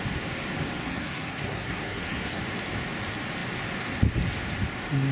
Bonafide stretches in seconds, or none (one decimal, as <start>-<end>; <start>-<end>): 0.0-0.8; 2.4-5.1